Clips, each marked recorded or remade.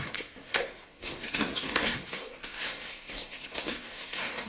remade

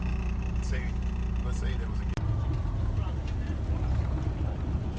recorded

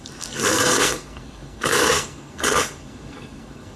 remade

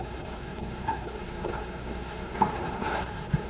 remade